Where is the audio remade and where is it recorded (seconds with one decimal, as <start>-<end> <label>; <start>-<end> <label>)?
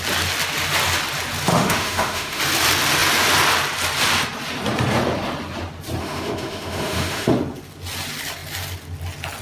0.0-1.5 recorded; 1.5-2.4 remade; 2.4-6.0 recorded; 6.0-7.3 remade; 7.3-9.4 recorded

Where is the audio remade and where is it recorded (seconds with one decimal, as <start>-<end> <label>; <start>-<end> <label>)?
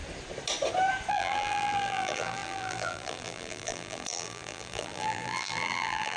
0.0-1.1 recorded; 1.1-6.2 remade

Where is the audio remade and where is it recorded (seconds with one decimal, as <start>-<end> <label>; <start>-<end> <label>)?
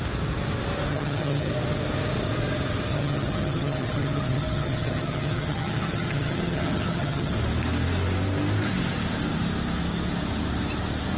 0.0-0.9 recorded; 0.9-1.5 remade; 1.5-2.9 recorded; 2.9-7.3 remade; 7.3-11.2 recorded